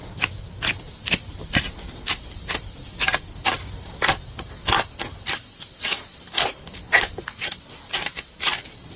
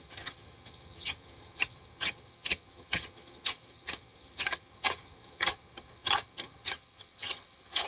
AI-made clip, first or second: second